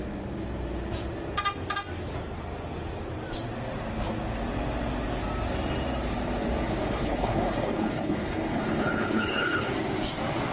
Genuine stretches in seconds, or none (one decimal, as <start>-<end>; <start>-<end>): 0.0-6.8; 9.7-10.5